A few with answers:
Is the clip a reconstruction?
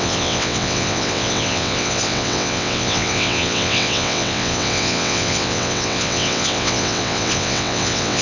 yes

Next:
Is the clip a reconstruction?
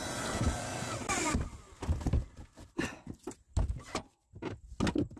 no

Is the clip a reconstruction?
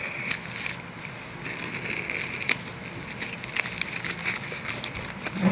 no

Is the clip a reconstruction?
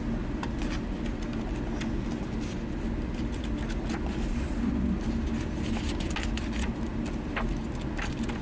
no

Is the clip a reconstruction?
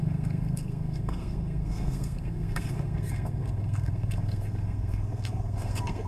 yes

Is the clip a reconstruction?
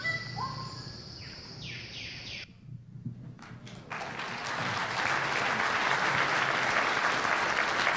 no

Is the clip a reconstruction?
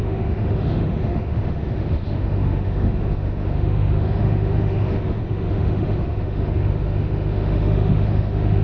yes